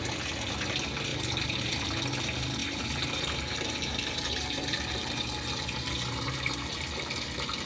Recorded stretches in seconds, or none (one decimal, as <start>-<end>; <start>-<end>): 0.0-1.1; 1.7-2.6; 7.2-7.7